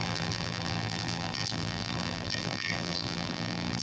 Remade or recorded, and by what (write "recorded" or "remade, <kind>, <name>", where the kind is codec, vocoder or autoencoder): remade, vocoder, BigVGAN v2